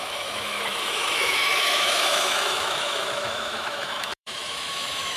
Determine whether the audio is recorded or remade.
remade